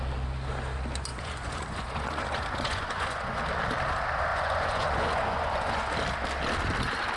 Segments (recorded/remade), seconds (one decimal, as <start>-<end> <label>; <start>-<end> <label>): 0.0-1.1 recorded; 1.1-3.4 remade; 3.4-4.3 recorded; 4.3-5.9 remade; 5.9-7.2 recorded